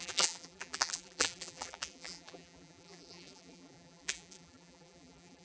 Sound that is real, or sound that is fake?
fake